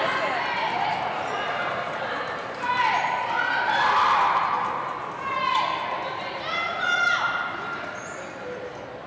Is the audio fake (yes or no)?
no